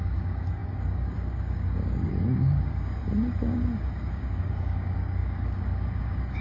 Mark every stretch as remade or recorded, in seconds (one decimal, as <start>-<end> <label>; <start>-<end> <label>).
0.0-3.0 remade; 3.0-4.1 recorded; 4.1-6.4 remade